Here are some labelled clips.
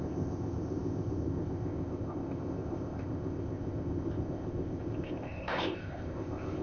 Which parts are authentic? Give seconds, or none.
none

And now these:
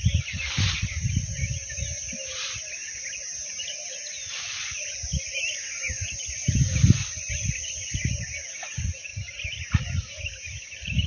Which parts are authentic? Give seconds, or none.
0.0-11.1

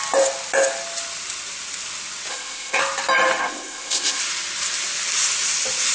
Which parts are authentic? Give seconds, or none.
0.0-2.3; 2.8-3.4; 4.2-5.9

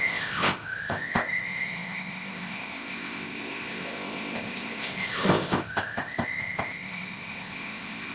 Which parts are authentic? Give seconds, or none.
none

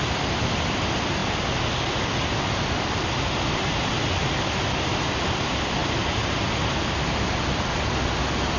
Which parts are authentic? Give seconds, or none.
0.0-8.6

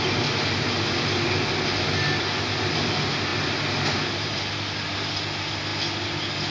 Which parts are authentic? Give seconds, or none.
0.0-6.5

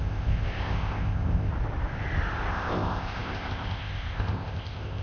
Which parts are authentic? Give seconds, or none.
1.5-2.5